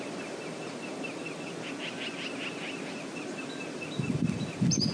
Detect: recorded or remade recorded